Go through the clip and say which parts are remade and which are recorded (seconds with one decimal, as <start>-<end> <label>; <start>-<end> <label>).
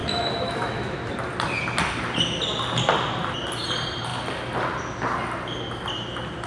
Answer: 0.0-1.1 remade; 1.1-6.5 recorded